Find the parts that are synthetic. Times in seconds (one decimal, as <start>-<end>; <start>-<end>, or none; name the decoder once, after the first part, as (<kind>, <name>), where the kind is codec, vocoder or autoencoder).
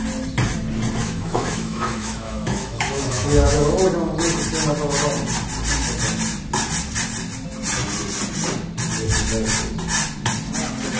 1.0-3.8 (autoencoder, DAC-VAE)